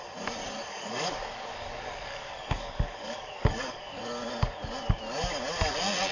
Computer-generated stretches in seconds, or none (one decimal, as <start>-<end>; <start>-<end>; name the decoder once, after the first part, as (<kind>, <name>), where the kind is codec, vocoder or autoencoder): 0.7-4.0 (codec, DAC)